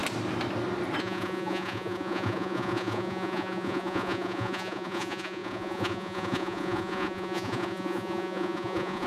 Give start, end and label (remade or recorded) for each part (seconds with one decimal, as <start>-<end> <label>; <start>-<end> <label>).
0.0-1.0 recorded; 1.0-9.1 remade